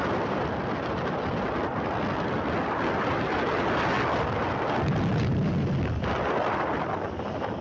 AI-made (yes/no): no